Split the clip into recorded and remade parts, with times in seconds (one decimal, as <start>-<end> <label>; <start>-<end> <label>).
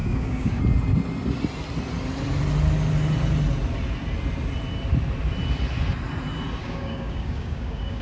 0.0-0.6 remade; 0.6-6.6 recorded; 6.6-8.0 remade